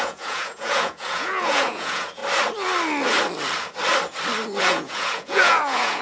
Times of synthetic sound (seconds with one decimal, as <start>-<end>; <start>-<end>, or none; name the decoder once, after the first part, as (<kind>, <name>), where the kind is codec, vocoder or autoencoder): 0.0-2.2 (vocoder, Vocos); 4.6-6.0